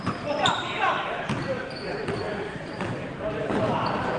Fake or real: fake